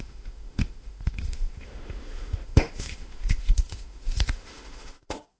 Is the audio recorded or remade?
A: remade